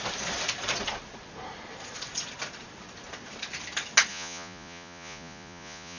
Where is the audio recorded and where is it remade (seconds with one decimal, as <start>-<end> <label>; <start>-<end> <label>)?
0.0-4.1 recorded; 4.1-6.0 remade